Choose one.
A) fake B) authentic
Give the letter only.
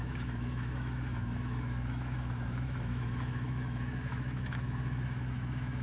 A